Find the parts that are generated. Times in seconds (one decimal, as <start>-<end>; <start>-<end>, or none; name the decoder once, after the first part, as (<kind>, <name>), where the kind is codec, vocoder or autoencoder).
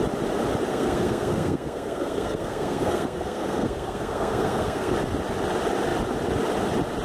0.7-4.9 (codec, SNAC)